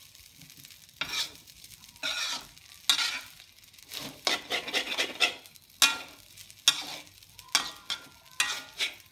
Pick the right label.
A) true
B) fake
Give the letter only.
A